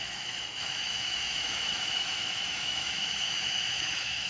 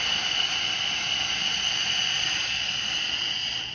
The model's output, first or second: first